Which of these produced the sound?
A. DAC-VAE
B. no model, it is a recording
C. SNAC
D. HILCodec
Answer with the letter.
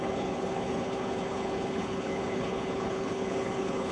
D